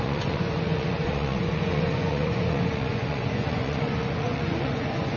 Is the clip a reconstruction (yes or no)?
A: yes